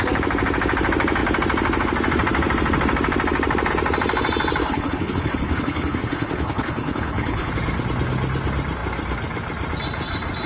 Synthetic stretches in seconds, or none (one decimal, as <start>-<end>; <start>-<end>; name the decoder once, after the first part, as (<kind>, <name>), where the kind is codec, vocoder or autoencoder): 4.6-7.5 (codec, HILCodec)

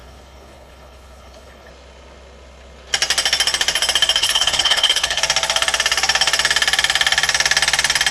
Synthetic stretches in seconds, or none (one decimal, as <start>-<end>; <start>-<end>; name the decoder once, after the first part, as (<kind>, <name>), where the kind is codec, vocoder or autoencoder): 0.0-1.7 (codec, HILCodec); 4.2-5.2